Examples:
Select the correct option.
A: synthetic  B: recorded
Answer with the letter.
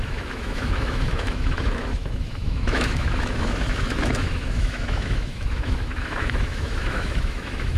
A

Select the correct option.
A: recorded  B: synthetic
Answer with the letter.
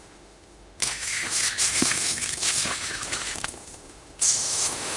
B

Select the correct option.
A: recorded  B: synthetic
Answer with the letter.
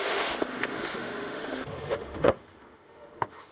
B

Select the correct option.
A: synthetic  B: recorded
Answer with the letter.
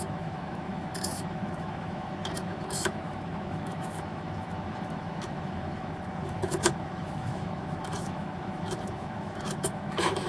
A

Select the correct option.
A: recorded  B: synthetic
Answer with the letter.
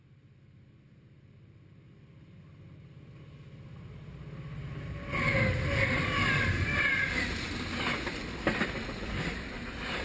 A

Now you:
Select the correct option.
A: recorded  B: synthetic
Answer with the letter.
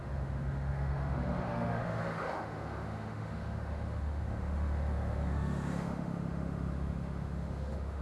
B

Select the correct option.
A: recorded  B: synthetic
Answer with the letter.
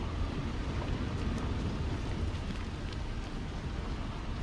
A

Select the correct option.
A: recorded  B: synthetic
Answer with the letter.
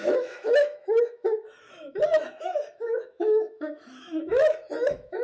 B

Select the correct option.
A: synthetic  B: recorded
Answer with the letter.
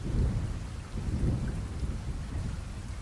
B